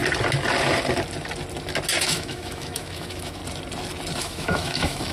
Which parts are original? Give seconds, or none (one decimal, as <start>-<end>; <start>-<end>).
0.0-2.0; 3.4-4.2